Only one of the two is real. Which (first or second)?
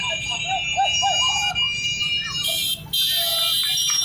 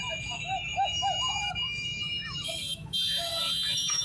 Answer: first